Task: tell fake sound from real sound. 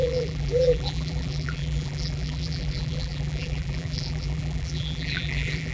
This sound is fake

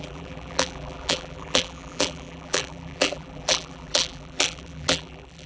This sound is fake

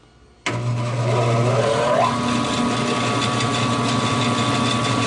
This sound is real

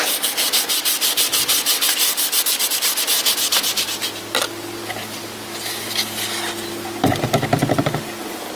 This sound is real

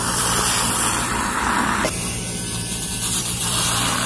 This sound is fake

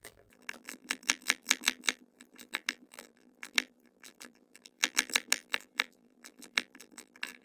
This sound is fake